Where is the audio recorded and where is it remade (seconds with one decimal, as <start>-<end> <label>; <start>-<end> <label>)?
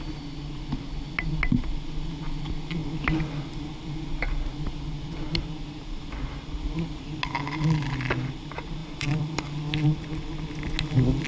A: 0.0-8.8 recorded; 8.8-9.4 remade; 9.4-11.3 recorded